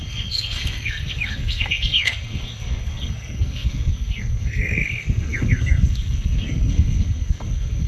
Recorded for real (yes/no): no